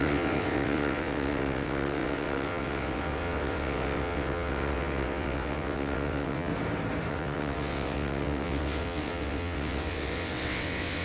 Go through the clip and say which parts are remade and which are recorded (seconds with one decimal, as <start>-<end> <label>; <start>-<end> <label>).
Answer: 0.0-6.5 remade; 6.5-7.1 recorded; 7.1-11.0 remade